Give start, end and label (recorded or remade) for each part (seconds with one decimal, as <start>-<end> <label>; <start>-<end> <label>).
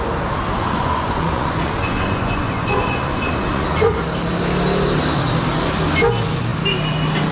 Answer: 0.0-0.5 recorded; 0.5-4.0 remade; 4.0-7.3 recorded